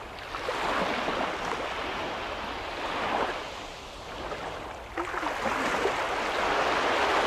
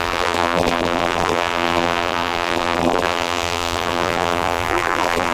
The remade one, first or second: second